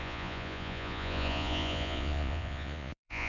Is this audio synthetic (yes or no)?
yes